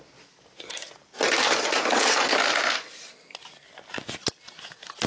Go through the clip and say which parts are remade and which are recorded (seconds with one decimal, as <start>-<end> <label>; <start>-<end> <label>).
0.0-5.1 recorded